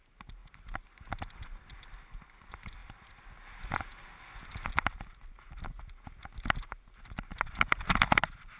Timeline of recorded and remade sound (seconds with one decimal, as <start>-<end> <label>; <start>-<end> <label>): 0.0-8.6 recorded